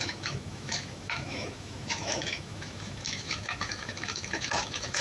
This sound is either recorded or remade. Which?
remade